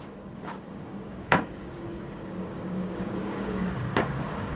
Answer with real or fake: fake